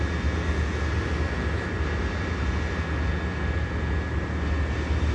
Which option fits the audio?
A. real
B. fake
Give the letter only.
A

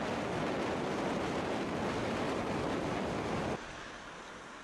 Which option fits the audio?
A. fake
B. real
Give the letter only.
B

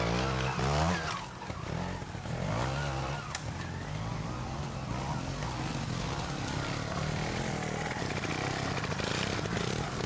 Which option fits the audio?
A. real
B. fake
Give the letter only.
A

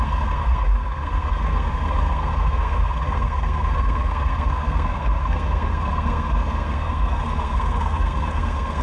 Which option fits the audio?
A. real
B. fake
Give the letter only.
B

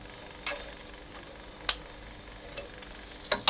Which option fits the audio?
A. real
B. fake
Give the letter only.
A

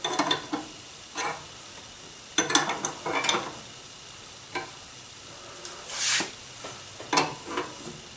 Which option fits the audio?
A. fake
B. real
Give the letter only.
B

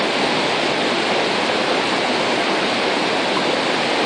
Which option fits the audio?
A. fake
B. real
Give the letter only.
B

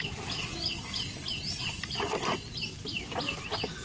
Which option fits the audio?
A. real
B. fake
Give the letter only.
A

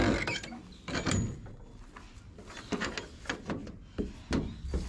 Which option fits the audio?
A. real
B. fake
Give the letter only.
A